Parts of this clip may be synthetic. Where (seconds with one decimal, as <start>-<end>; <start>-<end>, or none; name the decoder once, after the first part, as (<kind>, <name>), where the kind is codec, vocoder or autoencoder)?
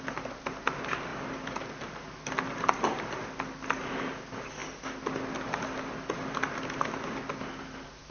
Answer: none